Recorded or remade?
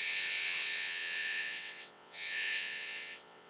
remade